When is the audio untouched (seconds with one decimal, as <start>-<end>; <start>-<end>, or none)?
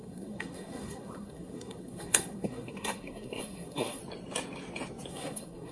4.0-5.1